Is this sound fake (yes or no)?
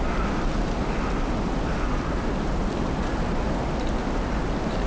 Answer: no